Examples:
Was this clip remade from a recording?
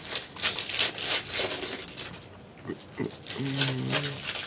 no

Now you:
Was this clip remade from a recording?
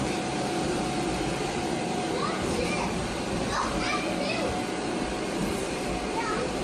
yes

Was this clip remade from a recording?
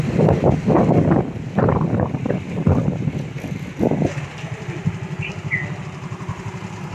no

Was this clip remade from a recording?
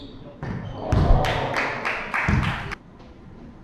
no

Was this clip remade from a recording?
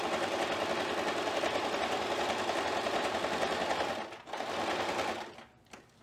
no